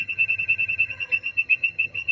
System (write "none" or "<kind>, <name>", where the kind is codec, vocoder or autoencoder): vocoder, HiFi-GAN